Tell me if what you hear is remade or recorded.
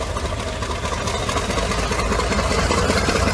recorded